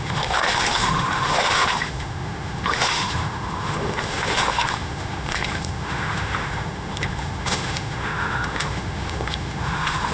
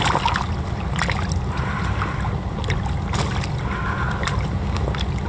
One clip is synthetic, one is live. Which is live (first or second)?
second